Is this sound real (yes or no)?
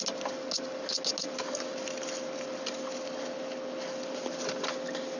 yes